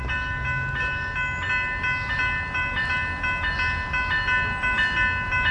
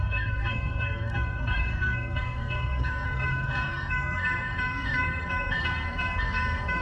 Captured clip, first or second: first